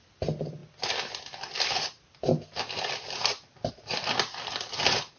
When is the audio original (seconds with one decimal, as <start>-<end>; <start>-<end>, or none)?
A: 0.0-5.2